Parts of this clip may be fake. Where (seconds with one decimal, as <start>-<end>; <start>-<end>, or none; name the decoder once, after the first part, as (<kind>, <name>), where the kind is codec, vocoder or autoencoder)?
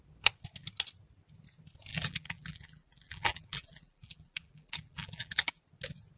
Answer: 1.9-5.6 (vocoder, BigVGAN v2)